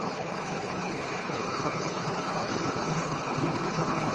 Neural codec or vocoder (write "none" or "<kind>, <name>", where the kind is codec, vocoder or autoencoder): codec, HILCodec